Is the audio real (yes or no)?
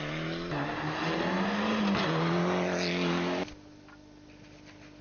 yes